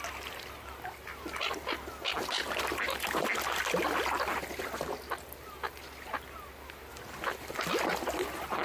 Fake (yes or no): no